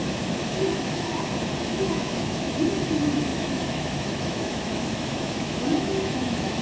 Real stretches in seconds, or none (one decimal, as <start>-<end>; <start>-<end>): 1.1-1.6